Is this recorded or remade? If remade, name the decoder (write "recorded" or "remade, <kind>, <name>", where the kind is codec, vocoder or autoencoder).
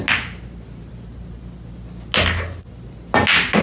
recorded